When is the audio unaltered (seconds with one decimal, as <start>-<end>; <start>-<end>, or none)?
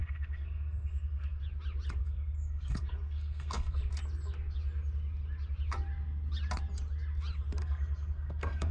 1.4-2.0; 3.8-7.6